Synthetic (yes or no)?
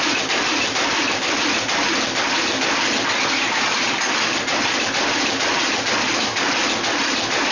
no